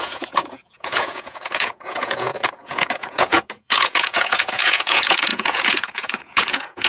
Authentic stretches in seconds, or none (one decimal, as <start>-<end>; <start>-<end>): none